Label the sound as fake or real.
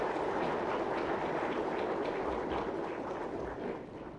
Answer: real